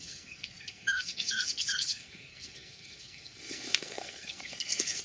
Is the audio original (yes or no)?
no